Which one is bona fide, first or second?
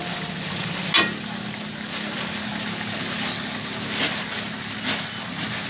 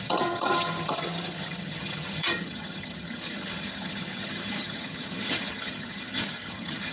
first